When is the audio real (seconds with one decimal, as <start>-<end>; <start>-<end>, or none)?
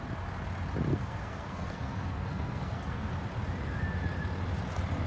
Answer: 0.0-0.9; 3.1-5.1